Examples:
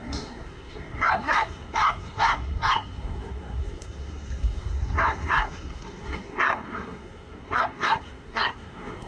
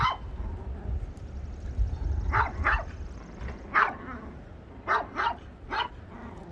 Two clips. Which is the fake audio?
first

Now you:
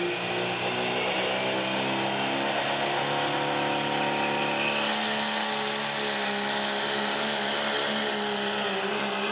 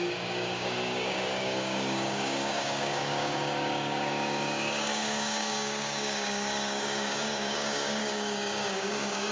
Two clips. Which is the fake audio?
second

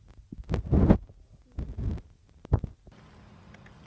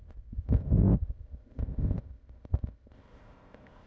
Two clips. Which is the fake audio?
second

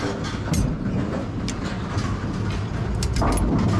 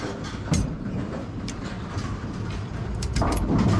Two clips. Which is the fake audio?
second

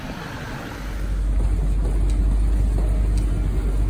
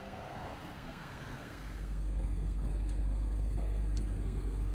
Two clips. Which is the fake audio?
second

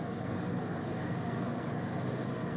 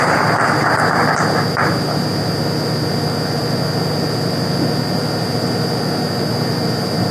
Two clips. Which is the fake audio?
first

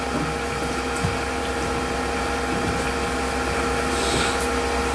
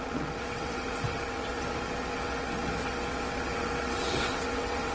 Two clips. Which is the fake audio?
second